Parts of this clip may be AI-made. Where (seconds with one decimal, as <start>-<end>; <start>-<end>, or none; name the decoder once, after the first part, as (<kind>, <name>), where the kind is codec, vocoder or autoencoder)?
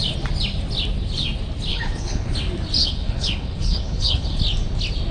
1.7-2.3 (codec, HILCodec); 2.8-4.4